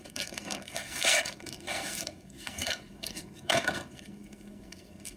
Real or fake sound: fake